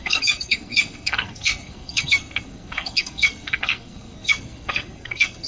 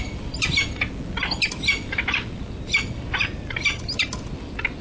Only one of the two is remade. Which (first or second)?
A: first